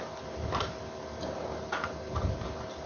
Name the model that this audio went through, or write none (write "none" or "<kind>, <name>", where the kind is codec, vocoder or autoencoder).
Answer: none